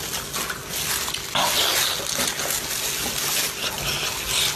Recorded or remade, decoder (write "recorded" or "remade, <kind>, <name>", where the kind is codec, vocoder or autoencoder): recorded